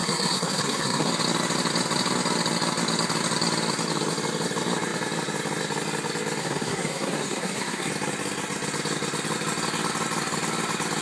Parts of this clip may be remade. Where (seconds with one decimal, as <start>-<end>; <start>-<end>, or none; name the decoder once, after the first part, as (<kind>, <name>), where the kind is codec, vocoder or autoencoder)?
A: 0.0-1.1 (codec, SNAC); 6.4-7.9